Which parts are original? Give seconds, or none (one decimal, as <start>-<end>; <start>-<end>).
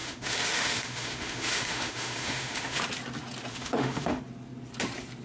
2.8-3.5; 4.2-5.2